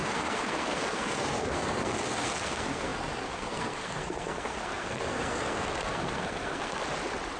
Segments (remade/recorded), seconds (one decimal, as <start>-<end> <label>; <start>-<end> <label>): 0.0-6.8 remade; 6.8-7.4 recorded